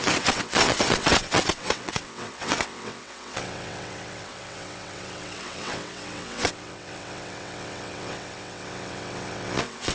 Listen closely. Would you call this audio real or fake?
fake